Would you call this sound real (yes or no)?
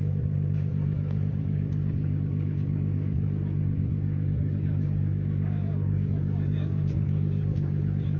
no